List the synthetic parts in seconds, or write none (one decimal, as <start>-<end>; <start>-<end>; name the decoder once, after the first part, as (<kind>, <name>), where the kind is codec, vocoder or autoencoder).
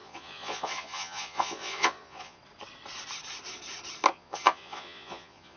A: 0.0-2.4 (vocoder, Vocos); 4.1-5.6